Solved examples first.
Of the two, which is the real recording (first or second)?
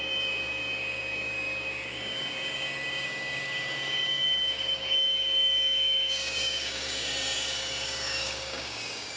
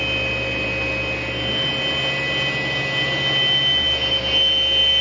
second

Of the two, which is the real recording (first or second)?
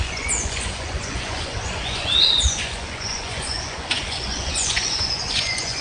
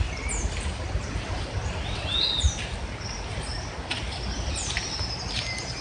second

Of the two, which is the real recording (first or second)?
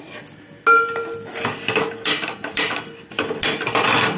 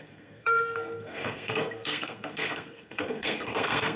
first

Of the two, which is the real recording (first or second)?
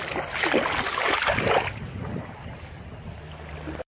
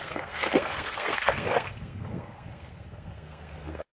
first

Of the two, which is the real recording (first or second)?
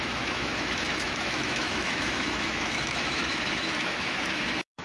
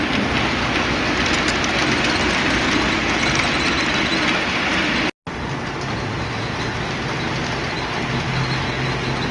second